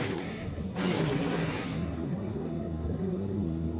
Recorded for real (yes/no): no